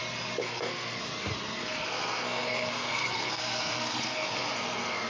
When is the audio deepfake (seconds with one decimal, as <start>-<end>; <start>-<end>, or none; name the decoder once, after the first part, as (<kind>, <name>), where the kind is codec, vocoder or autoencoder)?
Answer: 0.4-1.0 (codec, SNAC); 1.6-5.1